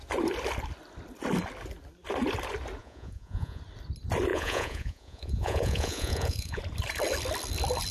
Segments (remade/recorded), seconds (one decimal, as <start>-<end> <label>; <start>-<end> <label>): 0.0-2.8 recorded; 2.8-3.6 remade; 3.6-4.3 recorded; 4.3-6.6 remade; 6.6-7.9 recorded